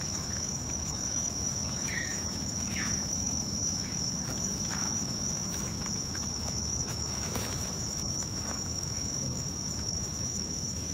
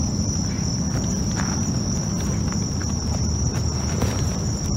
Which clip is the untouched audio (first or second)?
second